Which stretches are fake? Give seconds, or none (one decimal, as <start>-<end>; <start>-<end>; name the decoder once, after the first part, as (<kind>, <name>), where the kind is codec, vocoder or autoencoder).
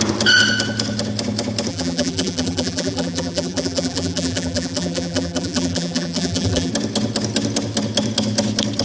1.7-6.7 (vocoder, BigVGAN v2)